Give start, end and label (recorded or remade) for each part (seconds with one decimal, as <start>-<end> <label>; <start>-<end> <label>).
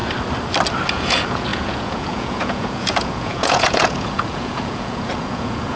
0.0-0.9 recorded; 0.9-5.8 remade